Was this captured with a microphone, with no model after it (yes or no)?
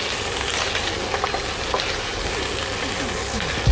yes